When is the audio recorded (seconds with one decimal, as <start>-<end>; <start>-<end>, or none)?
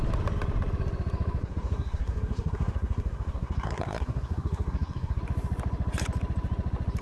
0.0-1.4; 5.2-7.0